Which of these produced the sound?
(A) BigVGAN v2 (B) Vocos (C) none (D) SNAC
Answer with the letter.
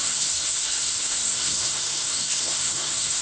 D